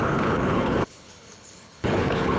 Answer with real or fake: fake